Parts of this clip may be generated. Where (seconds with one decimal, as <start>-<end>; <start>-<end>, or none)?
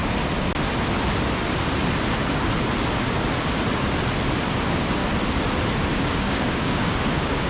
4.5-5.0; 5.9-7.5